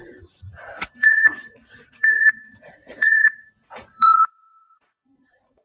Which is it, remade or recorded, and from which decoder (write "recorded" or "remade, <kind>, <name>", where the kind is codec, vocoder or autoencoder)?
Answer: remade, vocoder, Vocos